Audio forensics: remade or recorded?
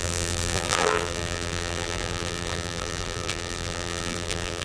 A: remade